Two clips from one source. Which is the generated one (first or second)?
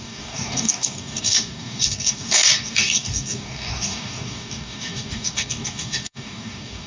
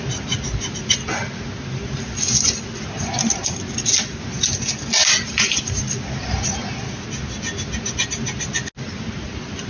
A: first